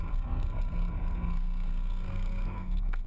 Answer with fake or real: fake